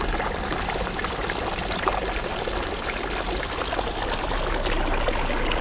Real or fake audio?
real